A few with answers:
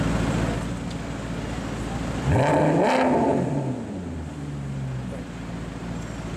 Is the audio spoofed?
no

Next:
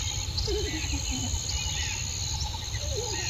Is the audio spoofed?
no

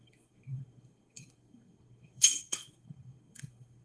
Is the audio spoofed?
yes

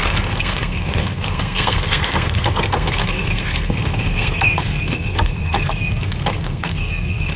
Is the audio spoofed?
yes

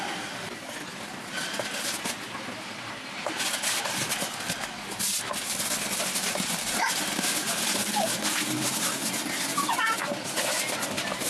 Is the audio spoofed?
no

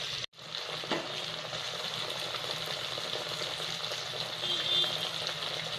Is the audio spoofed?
no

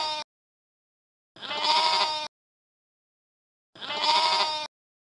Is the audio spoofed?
no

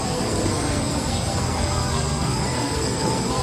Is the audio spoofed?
yes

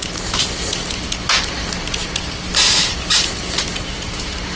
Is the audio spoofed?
no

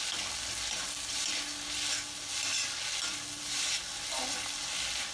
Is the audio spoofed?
no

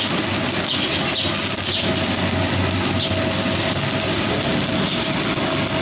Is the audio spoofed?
no